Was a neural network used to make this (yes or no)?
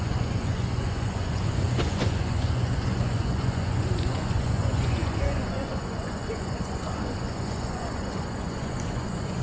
yes